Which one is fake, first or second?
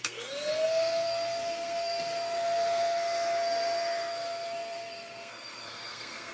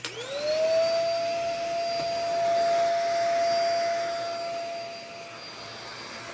first